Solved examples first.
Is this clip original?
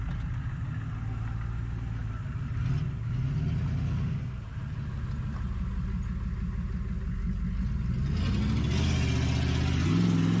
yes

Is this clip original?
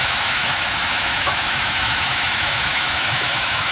no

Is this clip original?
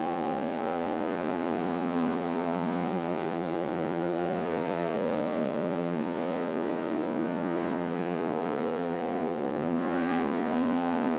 no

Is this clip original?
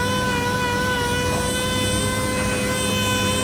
yes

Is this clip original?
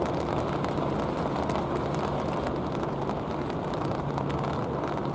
yes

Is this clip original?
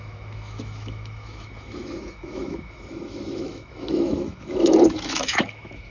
no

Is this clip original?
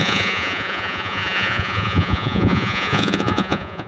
no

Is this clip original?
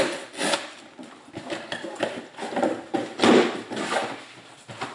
yes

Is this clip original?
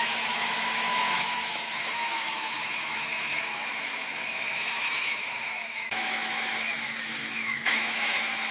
no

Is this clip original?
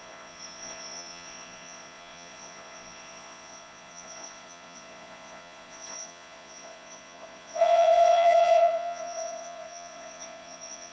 no